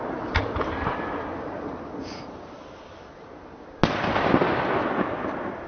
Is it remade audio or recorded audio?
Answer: recorded